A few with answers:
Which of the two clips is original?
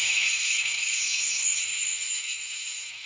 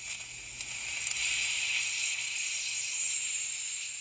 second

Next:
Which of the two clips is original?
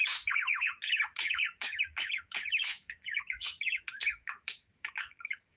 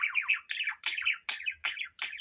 second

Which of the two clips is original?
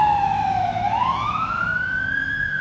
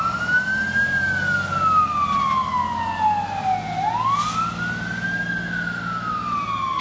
second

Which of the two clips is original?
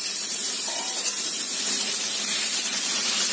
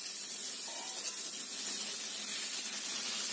second